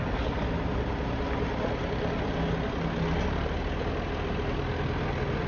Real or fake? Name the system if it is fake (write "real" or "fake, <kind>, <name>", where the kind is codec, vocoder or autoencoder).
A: real